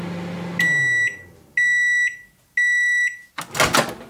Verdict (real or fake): real